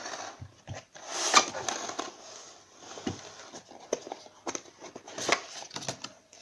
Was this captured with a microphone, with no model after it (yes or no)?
yes